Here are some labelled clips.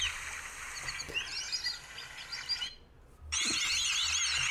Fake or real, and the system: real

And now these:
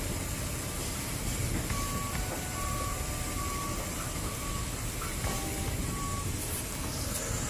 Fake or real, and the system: real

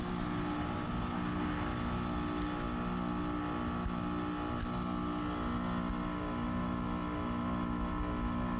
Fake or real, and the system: real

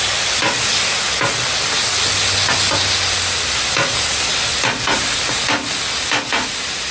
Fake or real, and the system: real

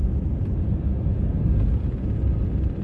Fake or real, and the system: real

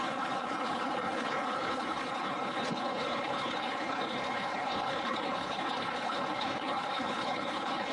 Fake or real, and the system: fake, codec, HILCodec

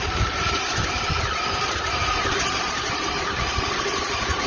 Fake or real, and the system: fake, vocoder, BigVGAN v2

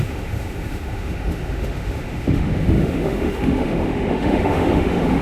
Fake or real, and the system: fake, autoencoder, DAC-VAE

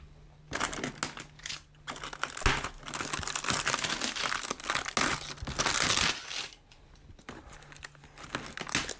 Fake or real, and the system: real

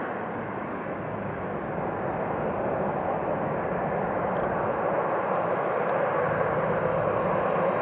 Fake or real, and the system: real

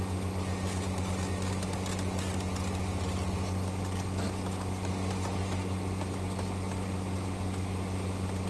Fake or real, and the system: real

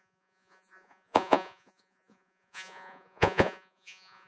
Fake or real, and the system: fake, vocoder, Vocos